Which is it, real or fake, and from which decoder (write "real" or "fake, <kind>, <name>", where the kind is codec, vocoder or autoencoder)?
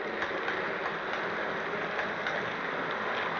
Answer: real